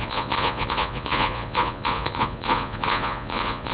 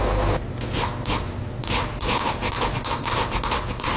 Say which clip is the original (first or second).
second